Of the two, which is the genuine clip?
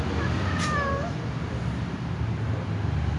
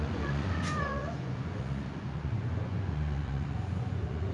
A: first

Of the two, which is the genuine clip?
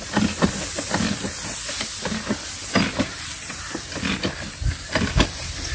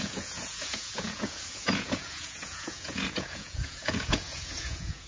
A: first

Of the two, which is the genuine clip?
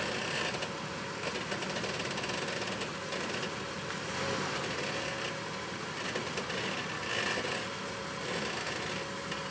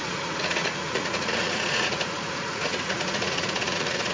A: first